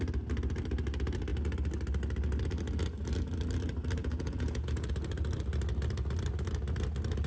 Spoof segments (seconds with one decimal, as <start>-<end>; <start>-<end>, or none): 4.0-4.9